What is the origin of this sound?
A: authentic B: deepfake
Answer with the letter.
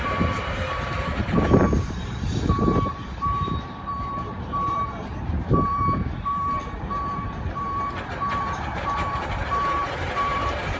B